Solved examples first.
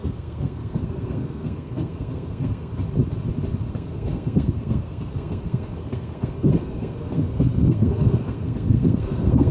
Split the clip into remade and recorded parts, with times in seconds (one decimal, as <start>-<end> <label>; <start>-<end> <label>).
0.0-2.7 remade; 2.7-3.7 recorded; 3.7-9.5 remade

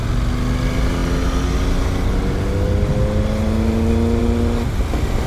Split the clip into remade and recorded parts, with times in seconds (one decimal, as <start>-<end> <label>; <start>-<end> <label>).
0.0-5.3 recorded

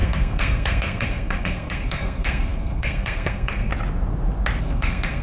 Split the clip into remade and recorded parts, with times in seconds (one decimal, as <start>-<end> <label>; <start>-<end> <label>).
0.0-3.7 remade; 3.7-4.6 recorded; 4.6-5.2 remade